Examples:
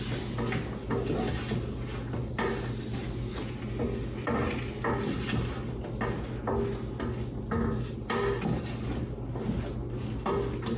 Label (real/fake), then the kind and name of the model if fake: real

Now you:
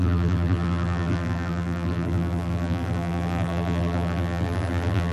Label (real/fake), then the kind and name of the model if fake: fake, vocoder, BigVGAN v2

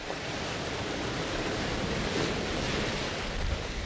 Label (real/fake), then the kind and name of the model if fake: fake, vocoder, BigVGAN v2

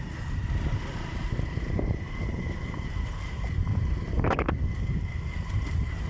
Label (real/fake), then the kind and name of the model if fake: fake, vocoder, BigVGAN v2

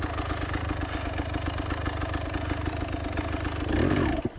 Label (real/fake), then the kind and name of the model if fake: real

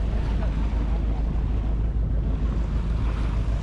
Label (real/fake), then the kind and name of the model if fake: real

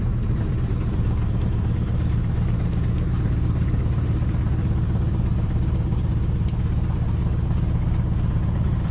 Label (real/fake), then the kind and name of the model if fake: fake, vocoder, BigVGAN v2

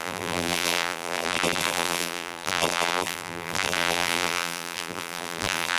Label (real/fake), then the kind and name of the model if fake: fake, vocoder, BigVGAN v2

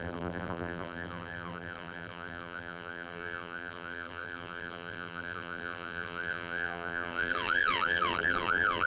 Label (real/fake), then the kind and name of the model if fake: fake, vocoder, BigVGAN v2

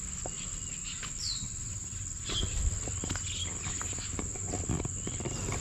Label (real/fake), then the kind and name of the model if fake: real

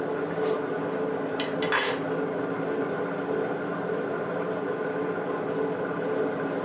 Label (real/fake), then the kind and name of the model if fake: real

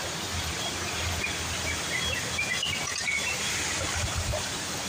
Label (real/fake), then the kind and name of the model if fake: real